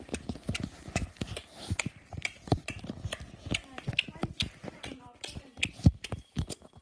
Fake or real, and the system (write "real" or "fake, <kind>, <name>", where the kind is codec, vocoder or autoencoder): fake, vocoder, BigVGAN v2